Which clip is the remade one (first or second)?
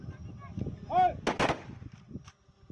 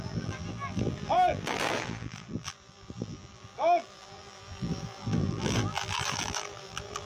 second